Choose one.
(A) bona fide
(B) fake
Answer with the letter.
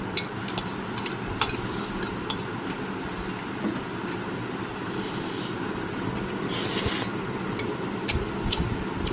A